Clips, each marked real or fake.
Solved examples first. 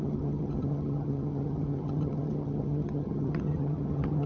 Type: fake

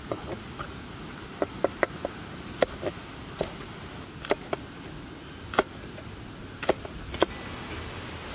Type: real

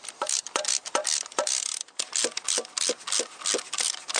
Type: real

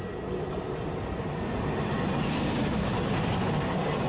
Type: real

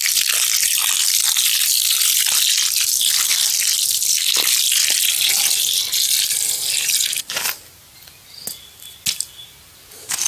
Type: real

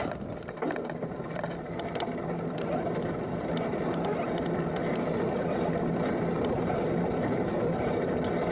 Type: real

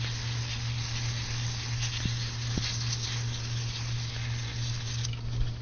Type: real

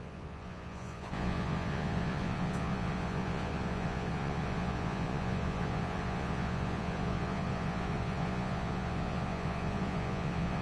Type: fake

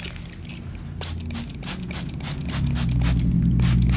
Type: real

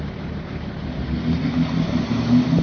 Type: real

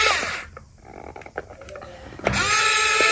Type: real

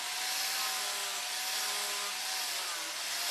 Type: real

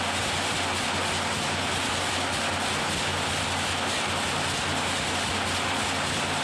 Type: real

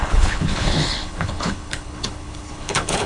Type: fake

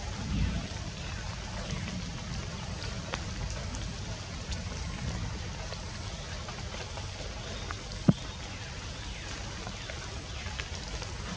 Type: real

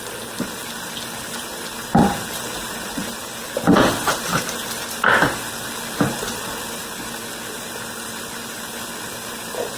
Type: real